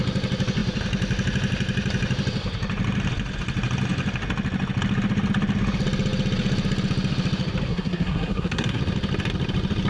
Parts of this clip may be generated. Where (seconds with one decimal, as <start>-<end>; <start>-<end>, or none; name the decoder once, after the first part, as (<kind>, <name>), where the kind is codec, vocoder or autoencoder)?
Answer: 7.7-8.8 (codec, SNAC)